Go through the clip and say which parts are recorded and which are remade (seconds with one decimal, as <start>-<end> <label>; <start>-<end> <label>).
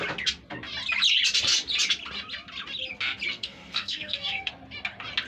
0.0-3.3 recorded; 3.3-4.5 remade; 4.5-5.3 recorded